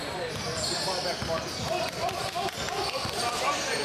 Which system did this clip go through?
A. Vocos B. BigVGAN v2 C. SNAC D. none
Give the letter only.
D